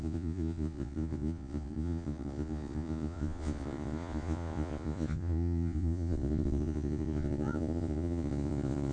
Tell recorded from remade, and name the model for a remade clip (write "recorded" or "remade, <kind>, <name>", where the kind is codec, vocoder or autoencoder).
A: remade, vocoder, Vocos